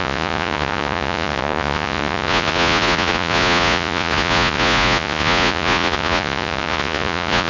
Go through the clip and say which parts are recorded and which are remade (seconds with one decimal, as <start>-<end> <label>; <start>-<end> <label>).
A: 0.0-7.5 remade